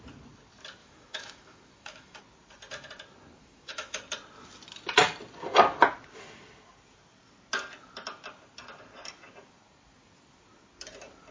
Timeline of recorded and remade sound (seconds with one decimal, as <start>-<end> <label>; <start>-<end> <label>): 0.0-0.8 recorded; 0.8-2.2 remade; 2.2-3.4 recorded; 3.4-4.0 remade; 4.0-11.3 recorded